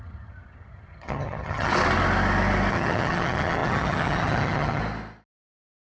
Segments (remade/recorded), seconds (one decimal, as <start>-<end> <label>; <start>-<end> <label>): 0.0-1.7 remade; 1.7-2.7 recorded; 2.7-4.8 remade; 4.8-6.0 recorded